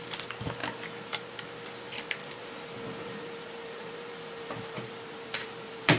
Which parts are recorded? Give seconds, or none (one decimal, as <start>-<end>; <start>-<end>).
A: 0.0-0.6; 1.3-2.2